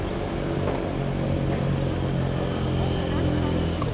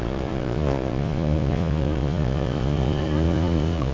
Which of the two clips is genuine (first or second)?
first